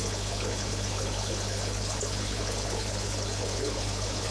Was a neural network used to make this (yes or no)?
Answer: yes